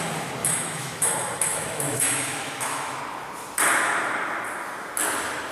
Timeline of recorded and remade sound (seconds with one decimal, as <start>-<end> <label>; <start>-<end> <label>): 0.0-0.4 recorded; 0.4-1.1 remade; 1.1-1.5 recorded; 1.5-3.0 remade; 3.0-5.5 recorded